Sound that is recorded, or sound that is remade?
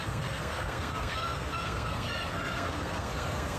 remade